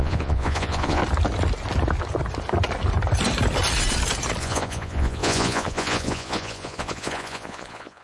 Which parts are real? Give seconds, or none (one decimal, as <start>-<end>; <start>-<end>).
1.0-4.4